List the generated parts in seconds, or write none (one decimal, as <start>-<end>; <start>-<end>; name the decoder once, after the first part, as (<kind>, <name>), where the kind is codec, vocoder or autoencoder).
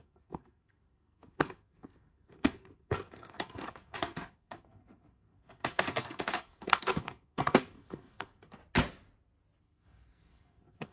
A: 0.0-8.6 (codec, SNAC); 9.6-10.9